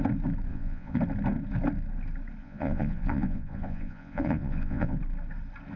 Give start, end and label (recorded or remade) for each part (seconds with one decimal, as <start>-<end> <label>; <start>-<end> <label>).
0.0-0.5 recorded; 0.5-1.0 remade; 1.0-2.4 recorded; 2.4-5.0 remade; 5.0-5.8 recorded